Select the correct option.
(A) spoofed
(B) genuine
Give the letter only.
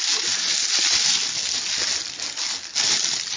B